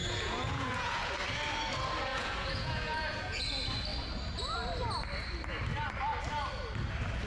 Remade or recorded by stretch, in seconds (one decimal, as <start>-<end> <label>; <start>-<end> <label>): 0.0-1.1 remade; 1.1-2.1 recorded; 2.1-3.4 remade; 3.4-7.3 recorded